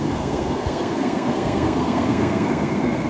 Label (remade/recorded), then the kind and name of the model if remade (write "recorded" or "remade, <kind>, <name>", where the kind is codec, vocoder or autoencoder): remade, codec, SNAC